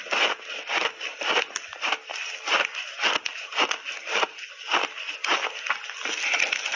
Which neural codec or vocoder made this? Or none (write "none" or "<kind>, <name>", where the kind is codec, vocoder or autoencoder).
none